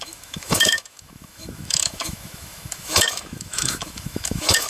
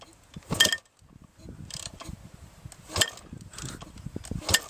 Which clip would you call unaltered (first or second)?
second